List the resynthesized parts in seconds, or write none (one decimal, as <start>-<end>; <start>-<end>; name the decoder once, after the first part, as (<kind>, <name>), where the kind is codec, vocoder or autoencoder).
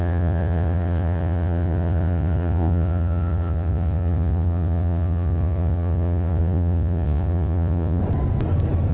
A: 0.0-8.0 (vocoder, Vocos)